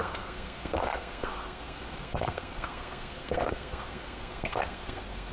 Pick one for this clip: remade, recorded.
remade